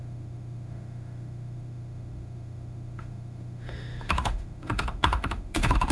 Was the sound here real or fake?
fake